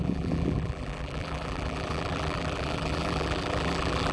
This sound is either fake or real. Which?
fake